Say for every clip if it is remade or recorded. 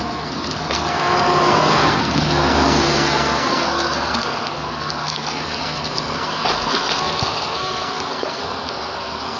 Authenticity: remade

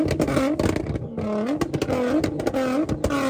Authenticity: recorded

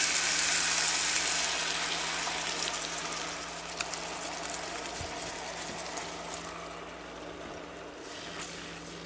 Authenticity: recorded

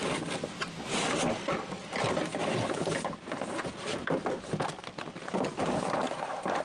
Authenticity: recorded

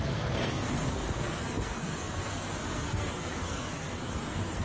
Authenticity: remade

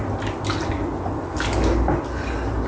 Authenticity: recorded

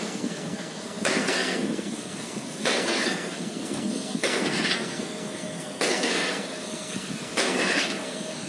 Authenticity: remade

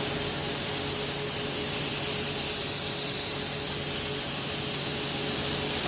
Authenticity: recorded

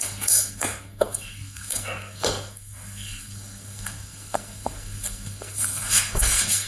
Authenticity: remade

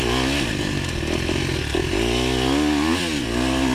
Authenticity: recorded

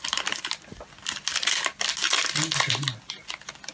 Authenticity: recorded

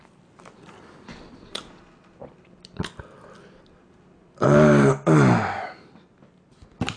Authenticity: recorded